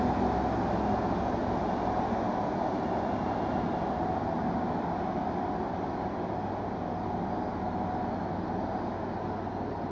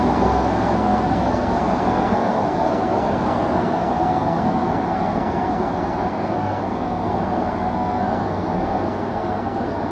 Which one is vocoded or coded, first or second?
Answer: second